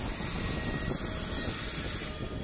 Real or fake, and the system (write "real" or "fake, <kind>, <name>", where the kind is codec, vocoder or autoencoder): real